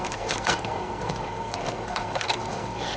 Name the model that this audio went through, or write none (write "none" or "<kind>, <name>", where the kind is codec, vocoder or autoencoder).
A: codec, SNAC